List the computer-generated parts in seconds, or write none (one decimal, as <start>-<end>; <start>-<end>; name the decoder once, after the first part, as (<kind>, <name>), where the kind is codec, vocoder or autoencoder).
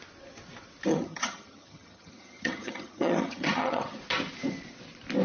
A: 0.9-4.0 (vocoder, HiFi-GAN)